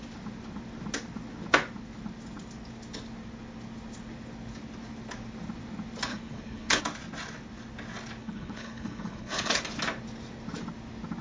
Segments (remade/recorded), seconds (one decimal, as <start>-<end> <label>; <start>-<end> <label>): 0.0-6.1 recorded; 6.1-6.8 remade; 6.8-8.2 recorded; 8.2-9.6 remade; 9.6-11.2 recorded